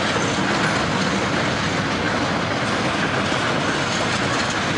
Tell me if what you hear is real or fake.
real